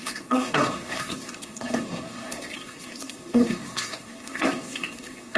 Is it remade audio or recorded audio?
remade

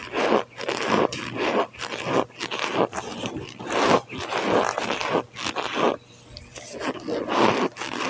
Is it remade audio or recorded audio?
recorded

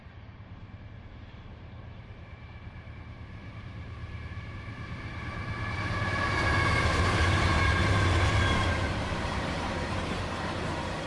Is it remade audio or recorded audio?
remade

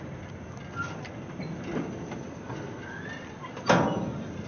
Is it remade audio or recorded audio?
recorded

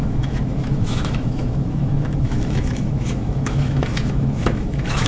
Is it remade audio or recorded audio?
remade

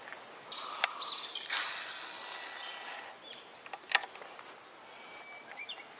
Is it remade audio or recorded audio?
recorded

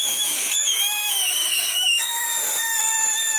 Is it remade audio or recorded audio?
remade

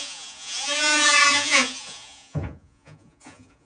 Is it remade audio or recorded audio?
remade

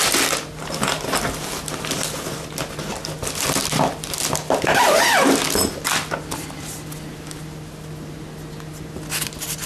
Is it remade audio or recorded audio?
recorded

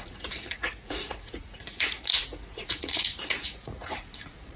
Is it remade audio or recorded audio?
remade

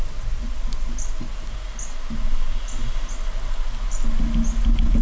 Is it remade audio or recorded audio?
recorded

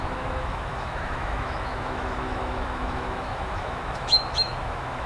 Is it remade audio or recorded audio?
remade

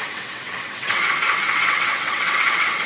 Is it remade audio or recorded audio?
remade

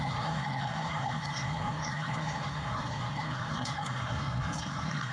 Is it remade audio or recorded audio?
remade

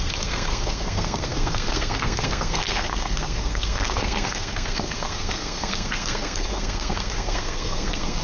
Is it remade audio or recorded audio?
remade